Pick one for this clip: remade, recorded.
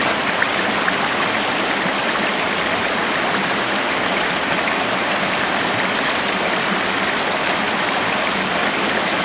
recorded